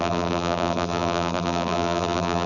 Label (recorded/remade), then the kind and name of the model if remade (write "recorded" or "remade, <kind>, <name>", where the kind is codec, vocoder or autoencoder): remade, vocoder, BigVGAN v2